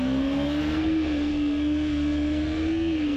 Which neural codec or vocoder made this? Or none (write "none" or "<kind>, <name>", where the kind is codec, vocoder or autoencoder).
codec, SNAC